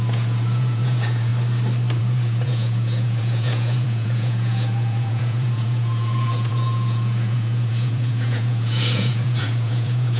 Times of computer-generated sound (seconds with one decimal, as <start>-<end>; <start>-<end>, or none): 0.0-1.3; 2.0-10.2